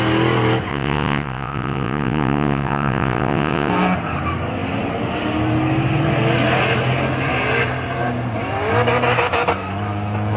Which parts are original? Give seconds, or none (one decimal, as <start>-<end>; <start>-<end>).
0.0-0.7; 3.7-10.4